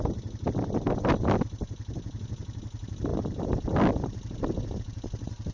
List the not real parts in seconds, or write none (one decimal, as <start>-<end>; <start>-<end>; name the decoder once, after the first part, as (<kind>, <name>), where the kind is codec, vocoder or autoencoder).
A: none